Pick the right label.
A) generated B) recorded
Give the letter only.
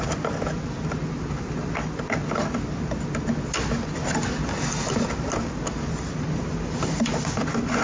B